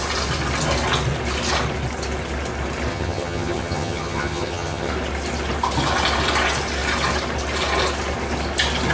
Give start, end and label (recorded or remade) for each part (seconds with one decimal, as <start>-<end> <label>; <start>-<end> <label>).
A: 0.0-2.9 recorded; 2.9-4.9 remade; 4.9-8.9 recorded